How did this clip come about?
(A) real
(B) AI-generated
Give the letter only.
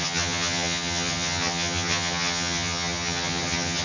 B